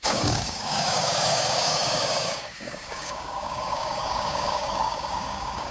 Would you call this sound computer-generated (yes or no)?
yes